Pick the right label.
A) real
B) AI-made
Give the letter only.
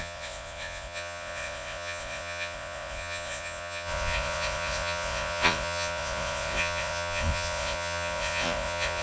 B